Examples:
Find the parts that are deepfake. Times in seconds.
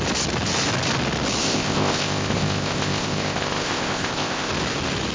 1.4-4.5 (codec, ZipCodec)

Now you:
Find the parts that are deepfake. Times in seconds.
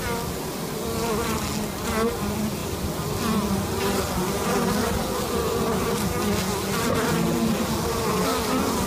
none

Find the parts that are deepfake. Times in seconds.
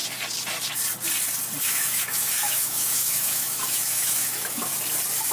1.6-4.7 (autoencoder, DAC-VAE)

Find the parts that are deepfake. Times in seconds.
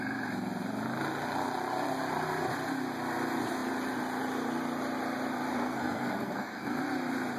5.5-6.8 (codec, SNAC)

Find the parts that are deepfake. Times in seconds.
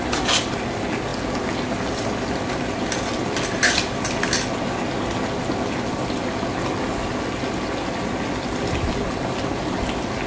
none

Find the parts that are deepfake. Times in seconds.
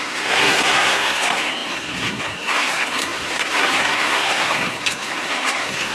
0.0-5.9 (codec, SNAC)